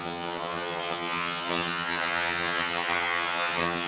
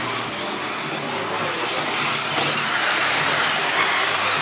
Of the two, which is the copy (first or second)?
first